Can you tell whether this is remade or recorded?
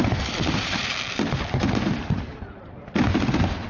remade